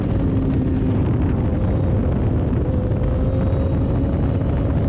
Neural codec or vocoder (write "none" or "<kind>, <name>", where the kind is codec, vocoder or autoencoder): none